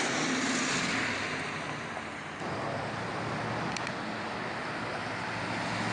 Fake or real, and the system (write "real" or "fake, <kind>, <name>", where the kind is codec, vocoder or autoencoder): real